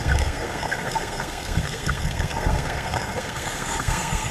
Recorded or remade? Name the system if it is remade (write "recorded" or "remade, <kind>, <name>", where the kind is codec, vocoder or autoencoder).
remade, codec, SNAC